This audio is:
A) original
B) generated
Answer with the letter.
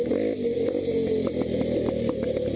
A